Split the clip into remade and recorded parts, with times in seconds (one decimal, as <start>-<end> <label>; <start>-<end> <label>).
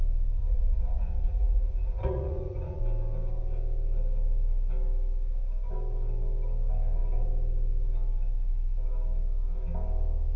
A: 0.0-0.4 recorded; 0.4-2.8 remade; 2.8-10.4 recorded